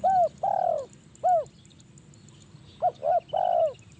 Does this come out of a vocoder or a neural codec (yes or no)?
no